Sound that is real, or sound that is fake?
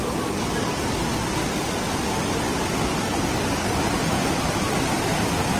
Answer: real